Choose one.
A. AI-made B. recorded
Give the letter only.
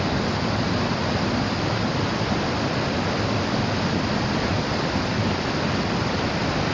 B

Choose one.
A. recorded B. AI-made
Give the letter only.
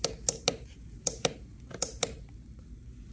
A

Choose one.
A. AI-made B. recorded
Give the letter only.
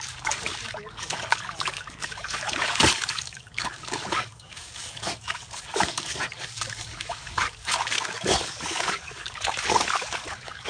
A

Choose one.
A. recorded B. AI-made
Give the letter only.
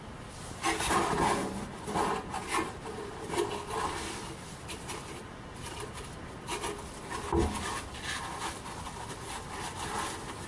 A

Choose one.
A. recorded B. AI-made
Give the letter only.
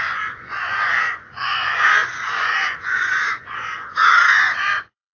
B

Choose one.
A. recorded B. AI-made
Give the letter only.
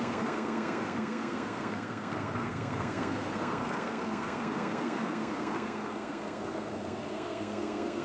B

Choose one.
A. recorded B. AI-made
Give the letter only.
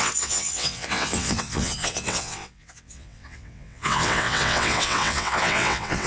B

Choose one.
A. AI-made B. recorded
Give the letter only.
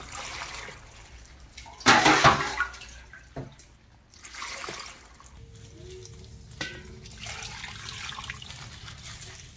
B